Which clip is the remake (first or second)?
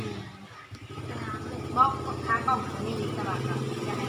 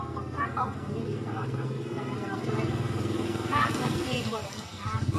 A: second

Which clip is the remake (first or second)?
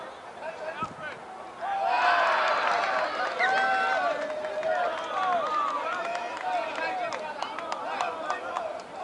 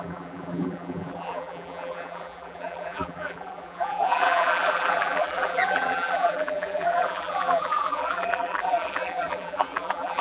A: second